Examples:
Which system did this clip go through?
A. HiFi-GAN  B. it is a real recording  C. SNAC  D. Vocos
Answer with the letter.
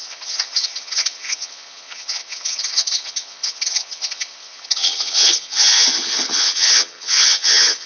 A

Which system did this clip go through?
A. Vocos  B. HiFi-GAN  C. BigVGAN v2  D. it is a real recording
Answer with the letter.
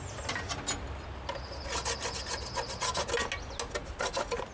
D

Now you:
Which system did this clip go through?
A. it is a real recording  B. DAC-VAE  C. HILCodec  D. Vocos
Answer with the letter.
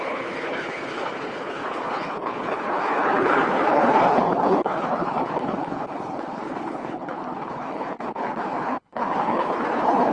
C